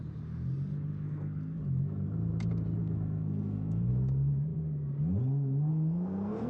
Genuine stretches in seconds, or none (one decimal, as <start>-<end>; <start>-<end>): 0.0-0.9; 1.6-2.8; 3.9-5.7

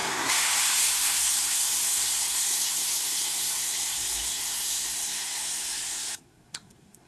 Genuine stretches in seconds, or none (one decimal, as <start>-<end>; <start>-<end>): none